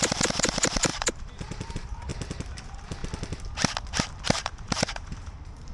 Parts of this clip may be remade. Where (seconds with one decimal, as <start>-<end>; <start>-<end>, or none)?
0.0-2.1; 2.6-3.0; 4.0-5.7